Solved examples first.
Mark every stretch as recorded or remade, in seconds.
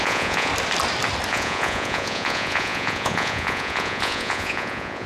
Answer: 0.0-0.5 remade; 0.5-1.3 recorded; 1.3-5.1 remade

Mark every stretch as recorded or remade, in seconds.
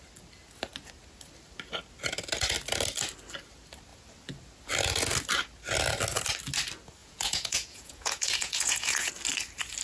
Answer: 0.0-7.0 recorded; 7.0-9.1 remade; 9.1-9.8 recorded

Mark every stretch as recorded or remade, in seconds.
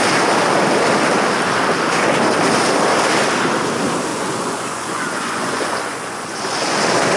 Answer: 0.0-4.1 recorded; 4.1-6.8 remade; 6.8-7.2 recorded